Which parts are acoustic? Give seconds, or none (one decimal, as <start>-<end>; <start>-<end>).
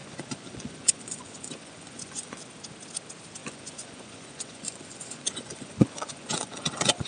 2.4-3.4